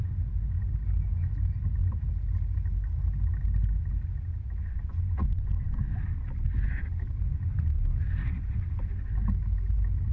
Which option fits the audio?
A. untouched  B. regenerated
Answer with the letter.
A